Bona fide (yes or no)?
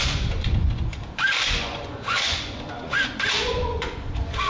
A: no